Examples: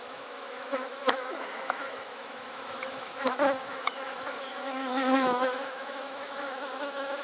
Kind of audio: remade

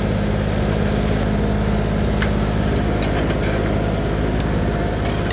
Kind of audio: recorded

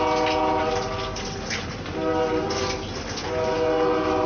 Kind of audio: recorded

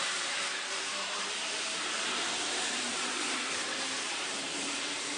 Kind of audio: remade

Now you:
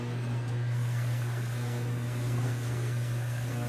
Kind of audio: remade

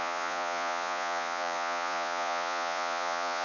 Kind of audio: remade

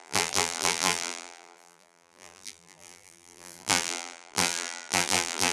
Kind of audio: remade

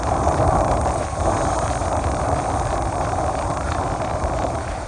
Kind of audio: recorded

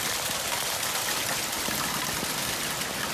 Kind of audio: recorded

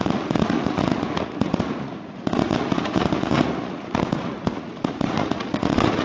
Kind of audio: remade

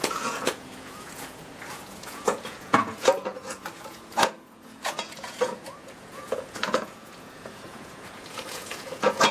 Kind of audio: remade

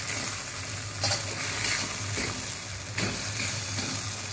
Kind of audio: recorded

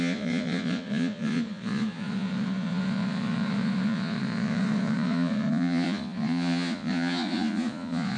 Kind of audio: remade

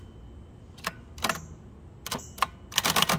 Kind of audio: recorded